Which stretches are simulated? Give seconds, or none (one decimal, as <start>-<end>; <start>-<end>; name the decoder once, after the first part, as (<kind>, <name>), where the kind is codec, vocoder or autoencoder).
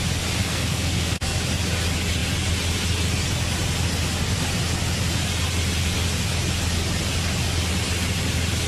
0.4-1.4 (codec, SNAC)